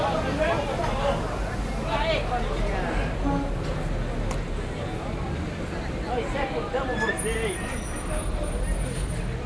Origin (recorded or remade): recorded